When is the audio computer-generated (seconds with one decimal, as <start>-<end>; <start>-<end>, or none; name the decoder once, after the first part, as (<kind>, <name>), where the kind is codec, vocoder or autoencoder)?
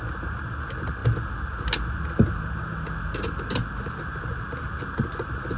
none